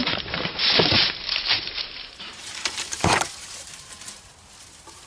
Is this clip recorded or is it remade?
remade